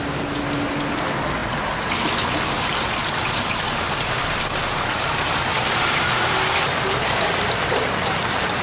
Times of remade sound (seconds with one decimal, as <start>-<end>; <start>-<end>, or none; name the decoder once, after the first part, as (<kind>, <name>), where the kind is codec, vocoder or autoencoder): 1.4-1.9 (vocoder, BigVGAN v2); 3.0-5.8